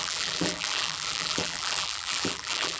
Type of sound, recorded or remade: remade